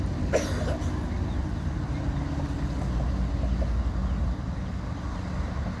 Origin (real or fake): real